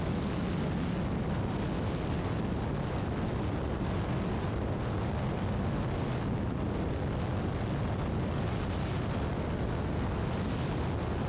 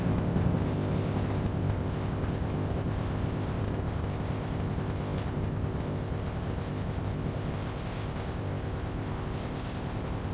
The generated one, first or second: second